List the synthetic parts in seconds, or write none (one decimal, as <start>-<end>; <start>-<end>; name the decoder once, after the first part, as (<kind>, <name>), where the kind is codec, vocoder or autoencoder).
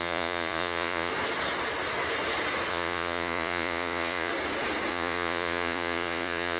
0.0-1.1 (vocoder, Vocos); 2.7-4.3; 4.9-6.6